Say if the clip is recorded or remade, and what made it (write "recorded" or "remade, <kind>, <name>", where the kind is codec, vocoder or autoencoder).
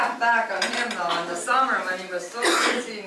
recorded